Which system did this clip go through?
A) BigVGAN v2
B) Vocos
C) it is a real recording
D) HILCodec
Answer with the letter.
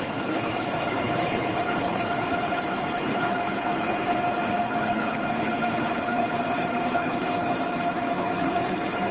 D